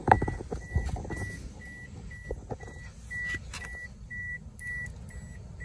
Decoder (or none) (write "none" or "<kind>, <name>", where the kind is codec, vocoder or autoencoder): none